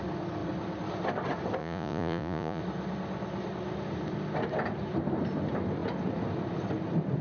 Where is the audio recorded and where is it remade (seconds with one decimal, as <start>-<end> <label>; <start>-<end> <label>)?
0.0-1.6 recorded; 1.6-2.6 remade; 2.6-7.2 recorded